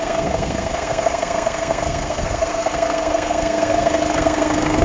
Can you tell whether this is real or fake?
fake